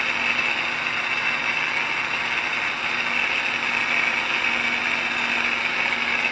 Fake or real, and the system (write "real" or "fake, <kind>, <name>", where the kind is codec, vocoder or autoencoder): real